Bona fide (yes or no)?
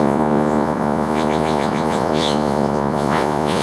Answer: no